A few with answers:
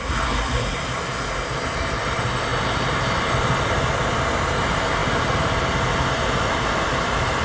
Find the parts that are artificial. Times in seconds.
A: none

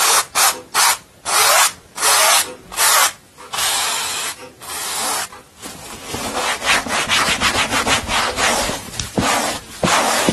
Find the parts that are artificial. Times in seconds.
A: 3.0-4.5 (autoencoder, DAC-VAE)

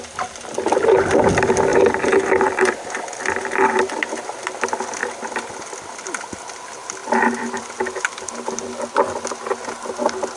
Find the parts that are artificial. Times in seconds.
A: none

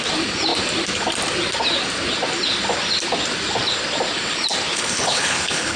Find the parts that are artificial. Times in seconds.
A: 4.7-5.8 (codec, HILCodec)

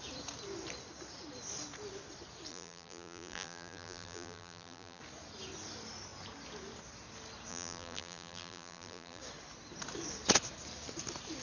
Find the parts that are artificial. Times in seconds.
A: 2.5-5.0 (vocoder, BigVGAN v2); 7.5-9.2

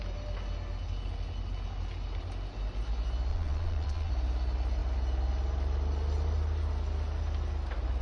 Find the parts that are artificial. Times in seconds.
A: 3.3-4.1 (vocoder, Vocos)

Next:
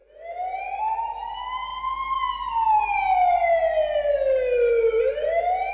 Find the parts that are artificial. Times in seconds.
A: none

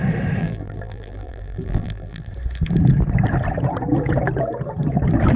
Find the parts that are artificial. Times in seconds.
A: 0.4-2.3 (vocoder, BigVGAN v2)